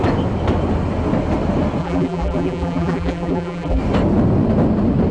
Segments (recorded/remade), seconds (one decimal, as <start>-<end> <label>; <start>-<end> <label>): 0.0-1.8 recorded; 1.8-3.8 remade; 3.8-5.1 recorded